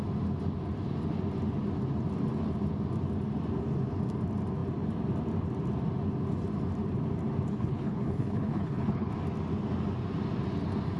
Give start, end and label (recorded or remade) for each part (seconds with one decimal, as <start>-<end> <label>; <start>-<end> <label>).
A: 0.0-7.5 recorded; 7.5-9.1 remade; 9.1-11.0 recorded